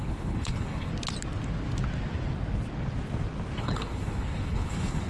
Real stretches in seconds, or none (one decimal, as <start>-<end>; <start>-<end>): 0.9-3.6